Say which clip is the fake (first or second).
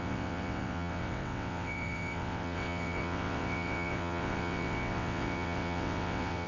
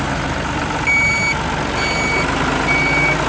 first